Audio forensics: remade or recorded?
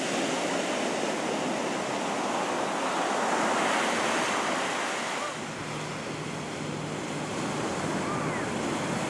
recorded